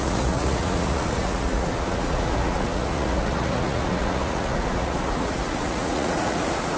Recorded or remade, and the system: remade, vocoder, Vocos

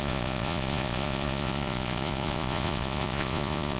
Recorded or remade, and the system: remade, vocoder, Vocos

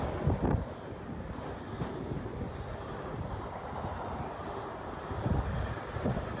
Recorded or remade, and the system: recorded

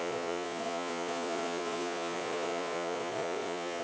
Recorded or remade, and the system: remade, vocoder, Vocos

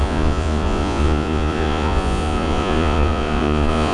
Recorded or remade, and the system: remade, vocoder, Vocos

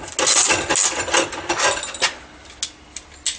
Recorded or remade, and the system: recorded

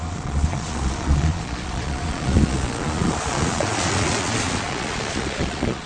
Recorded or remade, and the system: remade, vocoder, Vocos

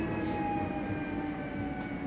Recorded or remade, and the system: recorded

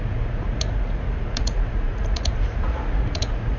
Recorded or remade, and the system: remade, vocoder, Vocos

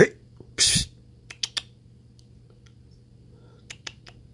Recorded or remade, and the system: recorded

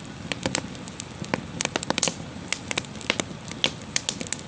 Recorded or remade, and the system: recorded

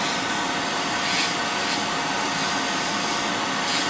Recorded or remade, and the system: recorded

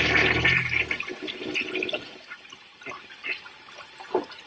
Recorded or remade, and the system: recorded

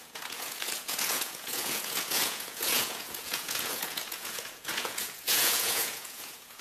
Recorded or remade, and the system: remade, vocoder, Vocos